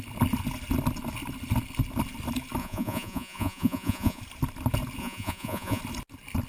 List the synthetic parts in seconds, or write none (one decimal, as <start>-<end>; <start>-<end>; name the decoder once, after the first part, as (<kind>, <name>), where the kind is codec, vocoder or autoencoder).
2.6-4.2 (vocoder, Vocos); 5.0-5.8